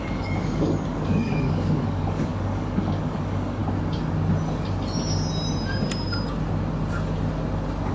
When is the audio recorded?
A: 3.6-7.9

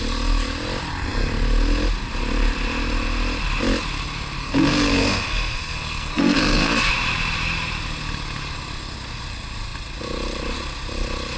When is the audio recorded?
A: 0.0-4.4; 6.9-11.4

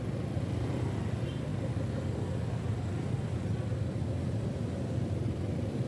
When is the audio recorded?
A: 0.0-5.9

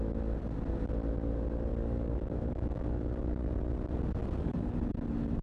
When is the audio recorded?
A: 0.0-1.7; 3.6-4.2; 4.7-5.4

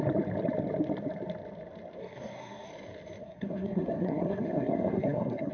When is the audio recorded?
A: 0.0-2.0; 2.7-3.2

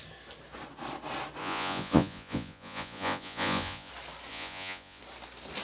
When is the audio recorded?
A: 0.0-1.4; 3.9-4.3; 5.0-5.6

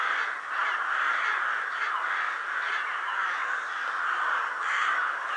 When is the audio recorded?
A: 0.0-5.4